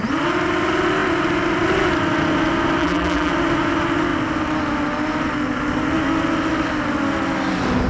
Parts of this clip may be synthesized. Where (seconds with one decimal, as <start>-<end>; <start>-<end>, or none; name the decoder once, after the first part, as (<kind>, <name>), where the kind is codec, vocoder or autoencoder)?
2.8-3.3 (vocoder, BigVGAN v2)